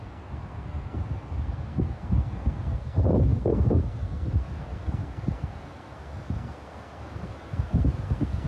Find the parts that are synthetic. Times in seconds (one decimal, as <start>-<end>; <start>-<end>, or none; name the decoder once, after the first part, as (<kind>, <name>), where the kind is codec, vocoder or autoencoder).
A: 0.0-8.5 (codec, SNAC)